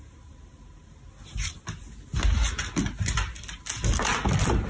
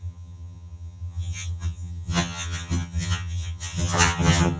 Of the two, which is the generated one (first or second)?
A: second